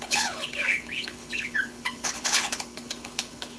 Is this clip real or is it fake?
fake